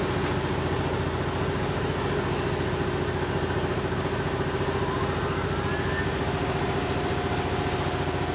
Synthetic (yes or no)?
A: no